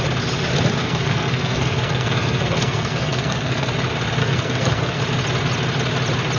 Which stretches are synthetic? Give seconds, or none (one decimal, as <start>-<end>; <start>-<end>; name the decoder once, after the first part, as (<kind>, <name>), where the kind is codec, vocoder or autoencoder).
0.8-3.7 (codec, SNAC); 4.2-5.0